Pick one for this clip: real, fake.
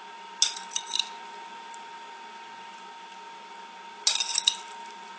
real